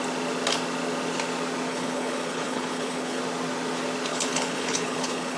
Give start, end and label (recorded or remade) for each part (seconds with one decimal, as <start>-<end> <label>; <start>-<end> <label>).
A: 0.0-1.7 recorded; 1.7-3.2 remade; 3.2-4.1 recorded; 4.1-5.4 remade